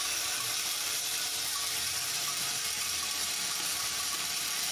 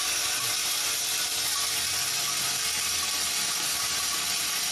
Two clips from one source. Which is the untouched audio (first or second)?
second